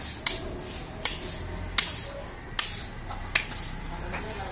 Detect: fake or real real